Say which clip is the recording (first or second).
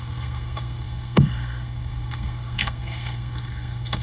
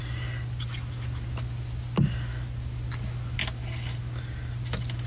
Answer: second